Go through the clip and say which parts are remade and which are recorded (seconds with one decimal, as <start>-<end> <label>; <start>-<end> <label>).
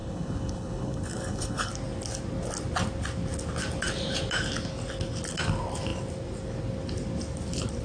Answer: 0.0-1.7 remade; 1.7-7.8 recorded